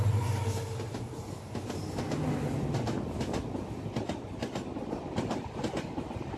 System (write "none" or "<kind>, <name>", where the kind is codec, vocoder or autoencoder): none